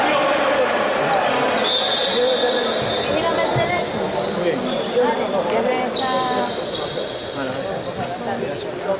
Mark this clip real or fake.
real